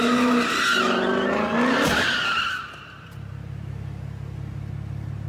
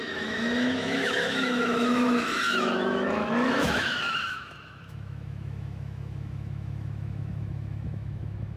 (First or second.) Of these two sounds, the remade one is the second